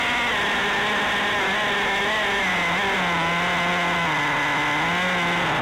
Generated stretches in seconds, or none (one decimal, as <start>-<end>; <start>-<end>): none